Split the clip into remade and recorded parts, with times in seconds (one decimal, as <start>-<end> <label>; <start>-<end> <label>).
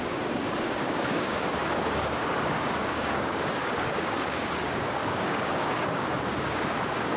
0.0-7.2 remade